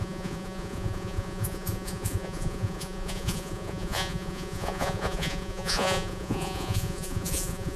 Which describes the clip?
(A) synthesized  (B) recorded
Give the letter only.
A